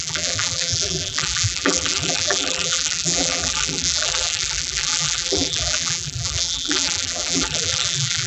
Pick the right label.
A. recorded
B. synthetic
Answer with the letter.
B